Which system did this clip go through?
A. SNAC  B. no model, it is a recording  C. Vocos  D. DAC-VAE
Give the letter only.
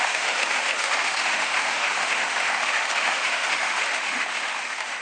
D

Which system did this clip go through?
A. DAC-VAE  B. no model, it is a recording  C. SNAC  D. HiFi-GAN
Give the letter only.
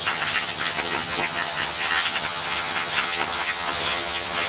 D